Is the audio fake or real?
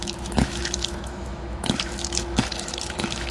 fake